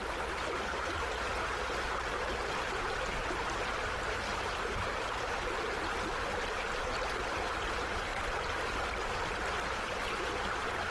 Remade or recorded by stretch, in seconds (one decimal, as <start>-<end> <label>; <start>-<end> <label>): 0.0-10.9 recorded